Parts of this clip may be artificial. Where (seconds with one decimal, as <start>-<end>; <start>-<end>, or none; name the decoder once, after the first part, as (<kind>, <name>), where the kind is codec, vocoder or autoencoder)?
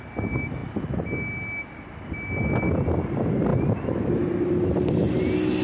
none